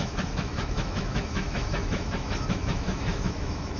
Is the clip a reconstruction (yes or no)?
yes